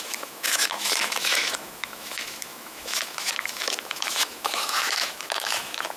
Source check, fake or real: fake